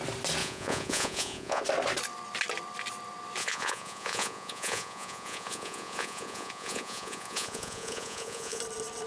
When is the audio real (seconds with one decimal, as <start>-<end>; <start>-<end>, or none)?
0.0-0.4; 1.6-3.4; 8.6-9.1